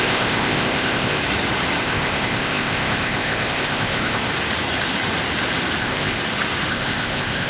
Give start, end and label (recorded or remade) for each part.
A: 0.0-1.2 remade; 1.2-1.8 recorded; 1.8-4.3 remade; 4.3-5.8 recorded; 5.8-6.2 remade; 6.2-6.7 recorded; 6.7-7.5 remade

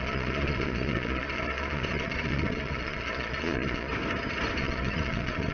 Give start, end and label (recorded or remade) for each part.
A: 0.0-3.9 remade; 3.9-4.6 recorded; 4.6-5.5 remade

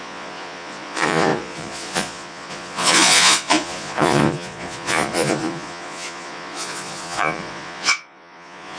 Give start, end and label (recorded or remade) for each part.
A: 0.0-8.8 remade

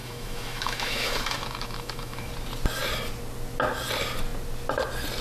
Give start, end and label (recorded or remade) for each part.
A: 0.0-2.3 remade; 2.3-5.2 recorded